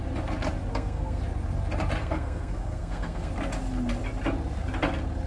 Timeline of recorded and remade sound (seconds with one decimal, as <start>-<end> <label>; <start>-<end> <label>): 0.0-0.7 recorded; 0.7-1.2 remade; 1.2-2.0 recorded; 2.0-3.3 remade; 3.3-5.3 recorded